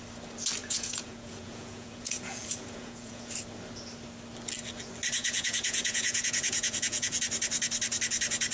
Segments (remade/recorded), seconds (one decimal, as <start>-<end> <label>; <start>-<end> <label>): 0.0-0.6 recorded; 0.6-3.3 remade; 3.3-5.2 recorded; 5.2-7.2 remade; 7.2-8.5 recorded